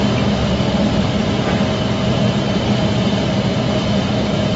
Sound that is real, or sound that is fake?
real